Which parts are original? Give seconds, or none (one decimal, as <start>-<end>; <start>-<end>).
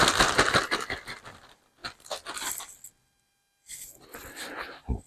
0.0-5.1